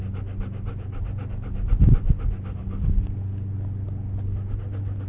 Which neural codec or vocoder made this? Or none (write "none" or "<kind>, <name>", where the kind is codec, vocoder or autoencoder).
none